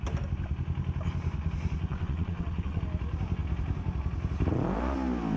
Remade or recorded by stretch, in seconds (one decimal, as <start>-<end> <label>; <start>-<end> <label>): 0.0-1.9 recorded; 1.9-2.8 remade; 2.8-5.4 recorded

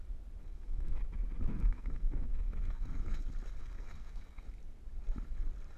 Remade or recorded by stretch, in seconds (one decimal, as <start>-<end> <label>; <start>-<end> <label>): 0.0-0.4 recorded; 0.4-1.0 remade; 1.0-1.5 recorded; 1.5-3.2 remade; 3.2-3.6 recorded; 3.6-4.5 remade; 4.5-5.8 recorded

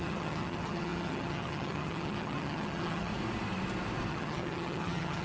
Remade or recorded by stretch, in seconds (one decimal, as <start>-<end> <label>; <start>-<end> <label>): 0.0-3.1 remade; 3.1-4.1 recorded; 4.1-5.2 remade

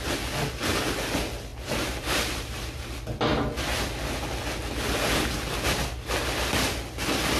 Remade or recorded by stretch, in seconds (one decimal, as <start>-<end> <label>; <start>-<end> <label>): 0.0-1.5 recorded; 1.5-2.8 remade; 2.8-7.4 recorded

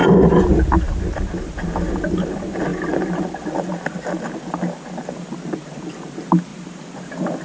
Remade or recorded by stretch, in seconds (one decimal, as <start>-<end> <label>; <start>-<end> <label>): 0.0-7.4 recorded

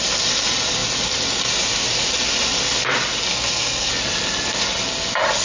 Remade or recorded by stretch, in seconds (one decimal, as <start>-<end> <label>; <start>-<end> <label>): 0.0-3.3 recorded; 3.3-3.9 remade; 3.9-5.4 recorded